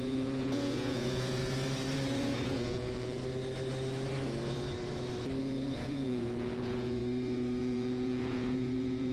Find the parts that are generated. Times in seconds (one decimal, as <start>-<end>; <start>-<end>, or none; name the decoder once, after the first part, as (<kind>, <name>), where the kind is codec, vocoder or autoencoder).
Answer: 0.0-1.4 (vocoder, Vocos); 2.2-3.2; 5.4-7.0; 7.6-9.1